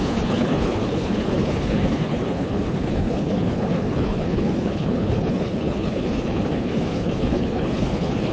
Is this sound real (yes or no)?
no